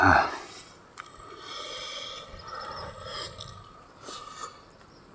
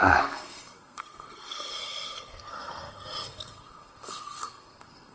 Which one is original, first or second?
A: first